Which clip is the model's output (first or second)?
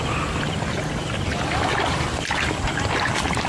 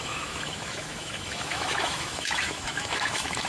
second